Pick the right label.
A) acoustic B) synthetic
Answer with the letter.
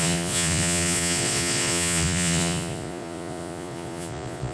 B